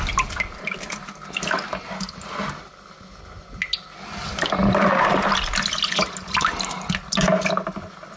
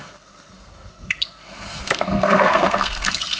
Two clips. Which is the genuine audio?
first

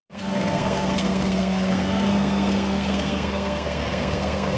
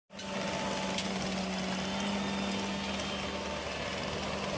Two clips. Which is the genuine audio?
second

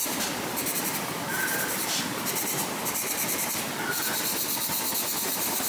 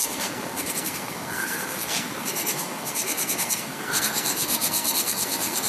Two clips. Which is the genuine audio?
first